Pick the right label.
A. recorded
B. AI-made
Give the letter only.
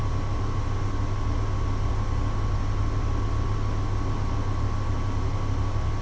A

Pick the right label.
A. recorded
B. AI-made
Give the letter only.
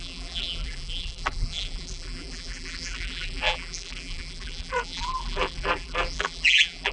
B